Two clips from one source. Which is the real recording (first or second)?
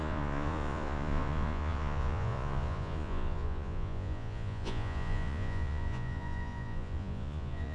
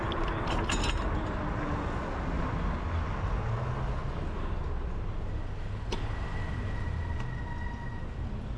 second